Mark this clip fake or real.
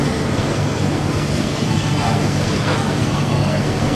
fake